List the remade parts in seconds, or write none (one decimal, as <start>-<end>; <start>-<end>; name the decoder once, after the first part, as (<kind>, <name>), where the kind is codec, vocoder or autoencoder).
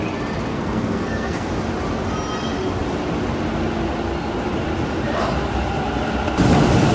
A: 0.5-1.5 (codec, SNAC)